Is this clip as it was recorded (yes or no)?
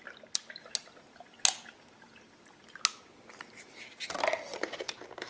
yes